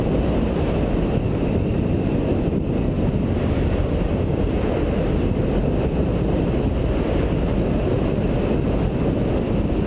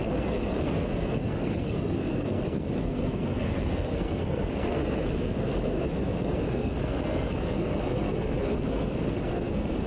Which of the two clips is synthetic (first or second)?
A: second